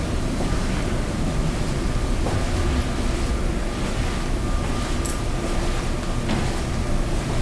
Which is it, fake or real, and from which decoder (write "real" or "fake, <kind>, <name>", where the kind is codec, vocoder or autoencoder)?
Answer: real